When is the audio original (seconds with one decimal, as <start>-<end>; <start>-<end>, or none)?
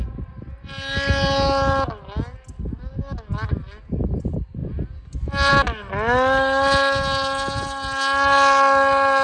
0.0-9.2